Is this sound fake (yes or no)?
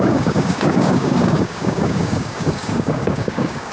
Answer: yes